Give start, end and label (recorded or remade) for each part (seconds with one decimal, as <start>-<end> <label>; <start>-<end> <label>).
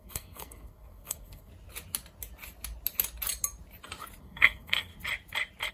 0.0-1.5 remade; 1.5-4.2 recorded; 4.2-4.9 remade; 4.9-5.7 recorded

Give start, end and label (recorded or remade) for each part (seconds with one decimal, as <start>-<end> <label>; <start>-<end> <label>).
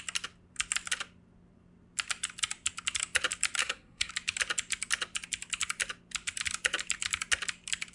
0.0-3.6 recorded; 3.6-4.1 remade; 4.1-7.9 recorded